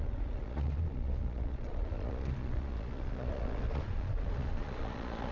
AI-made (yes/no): yes